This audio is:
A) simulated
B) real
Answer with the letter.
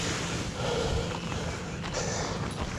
B